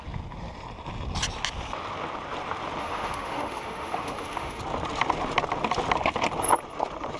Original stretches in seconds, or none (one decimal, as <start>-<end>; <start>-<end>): 0.0-2.8; 4.6-7.2